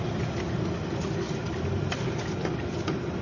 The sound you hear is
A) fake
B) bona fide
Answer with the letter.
B